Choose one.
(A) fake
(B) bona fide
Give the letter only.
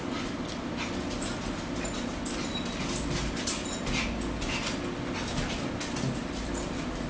B